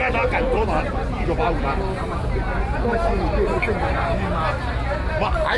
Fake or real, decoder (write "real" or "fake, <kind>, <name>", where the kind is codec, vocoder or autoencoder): real